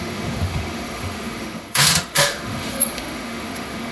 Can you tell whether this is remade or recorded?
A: remade